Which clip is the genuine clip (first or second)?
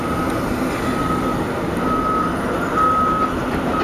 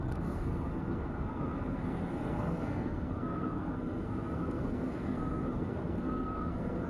first